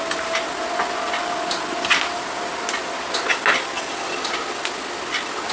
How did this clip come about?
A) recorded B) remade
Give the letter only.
A